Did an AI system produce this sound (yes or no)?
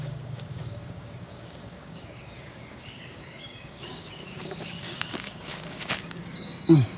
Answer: yes